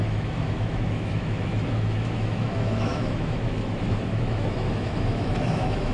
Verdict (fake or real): fake